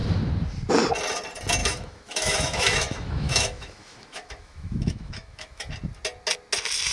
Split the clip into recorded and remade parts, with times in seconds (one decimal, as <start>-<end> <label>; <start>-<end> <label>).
0.0-1.6 recorded; 1.6-5.7 remade; 5.7-6.9 recorded